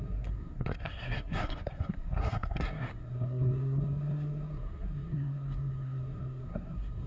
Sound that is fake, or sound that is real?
fake